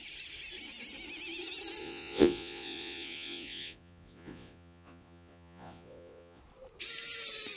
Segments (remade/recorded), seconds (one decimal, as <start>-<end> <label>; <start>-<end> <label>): 0.0-1.8 recorded; 1.8-6.4 remade; 6.4-7.6 recorded